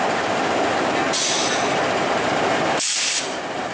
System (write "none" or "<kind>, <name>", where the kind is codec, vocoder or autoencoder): none